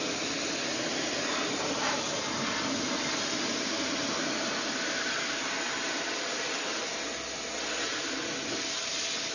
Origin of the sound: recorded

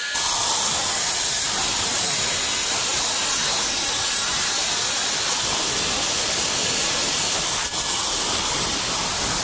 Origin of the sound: recorded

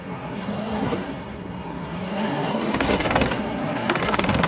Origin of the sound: remade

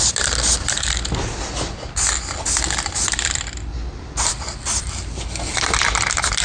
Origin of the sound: recorded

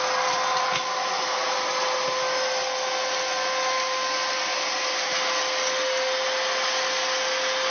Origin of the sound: recorded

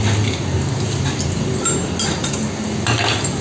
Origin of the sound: recorded